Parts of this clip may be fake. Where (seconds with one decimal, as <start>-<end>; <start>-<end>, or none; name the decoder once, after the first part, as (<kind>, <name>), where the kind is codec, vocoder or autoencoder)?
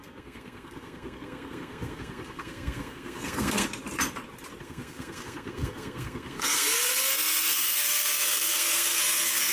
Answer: 0.0-3.7 (codec, SNAC); 4.6-9.5